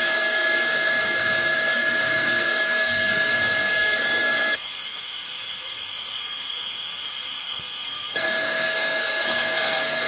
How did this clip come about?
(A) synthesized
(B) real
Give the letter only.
A